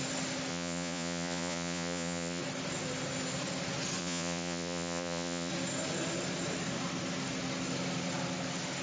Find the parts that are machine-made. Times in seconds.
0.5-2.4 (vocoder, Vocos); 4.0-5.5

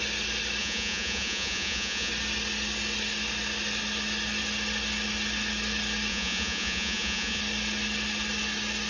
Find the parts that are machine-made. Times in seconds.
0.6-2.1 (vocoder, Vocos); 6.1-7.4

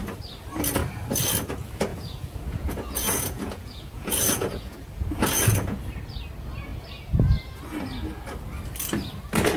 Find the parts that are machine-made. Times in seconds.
1.9-5.8 (vocoder, Vocos)

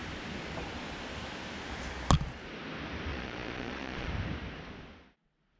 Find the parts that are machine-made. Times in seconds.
3.1-4.1 (vocoder, Vocos)

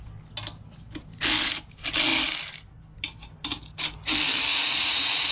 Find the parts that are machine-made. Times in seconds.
4.5-5.3 (vocoder, Vocos)

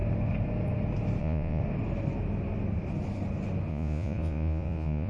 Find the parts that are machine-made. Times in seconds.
1.2-1.6 (vocoder, Vocos); 3.7-5.1